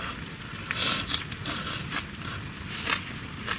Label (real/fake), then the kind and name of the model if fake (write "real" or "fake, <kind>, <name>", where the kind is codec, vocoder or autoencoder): real